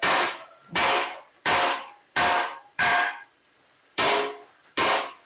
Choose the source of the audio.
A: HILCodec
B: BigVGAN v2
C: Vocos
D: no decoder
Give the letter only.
B